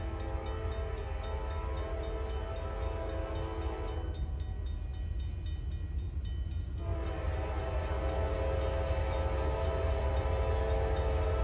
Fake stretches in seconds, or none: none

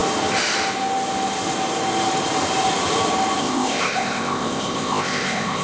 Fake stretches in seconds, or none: 3.4-5.6

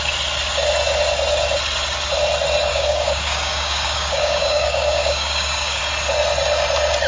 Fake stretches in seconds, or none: 2.7-5.8